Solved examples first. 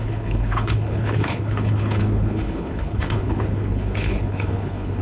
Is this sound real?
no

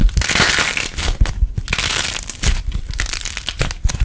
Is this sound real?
yes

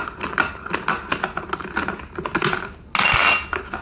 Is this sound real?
yes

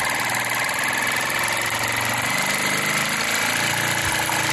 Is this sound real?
yes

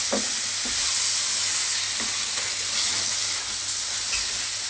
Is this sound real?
yes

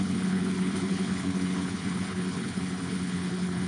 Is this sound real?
no